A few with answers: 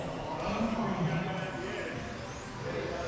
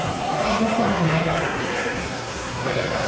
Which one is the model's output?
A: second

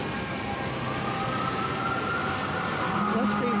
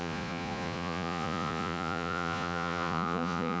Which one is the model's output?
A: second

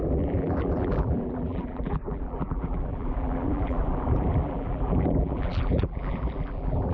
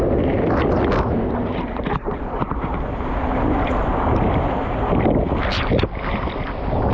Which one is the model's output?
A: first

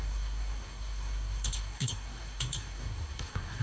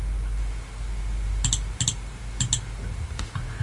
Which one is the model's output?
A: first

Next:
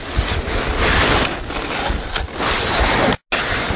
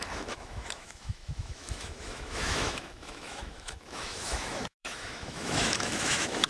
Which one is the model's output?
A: second